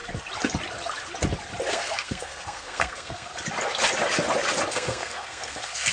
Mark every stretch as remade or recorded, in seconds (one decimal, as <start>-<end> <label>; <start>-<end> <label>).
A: 0.0-1.7 recorded; 1.7-3.3 remade; 3.3-4.7 recorded; 4.7-5.9 remade